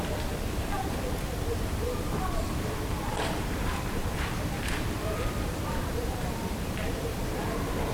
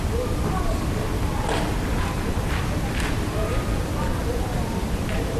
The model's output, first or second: first